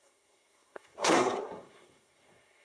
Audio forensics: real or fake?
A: fake